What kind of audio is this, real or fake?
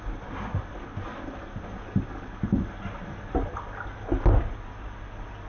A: real